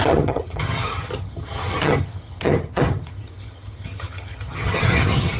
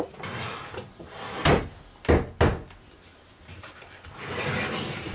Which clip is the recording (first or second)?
second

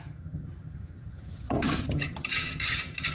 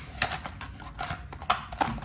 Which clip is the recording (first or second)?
second